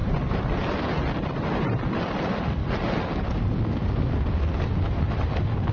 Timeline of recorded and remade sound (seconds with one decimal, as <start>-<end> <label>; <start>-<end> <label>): 0.0-5.7 recorded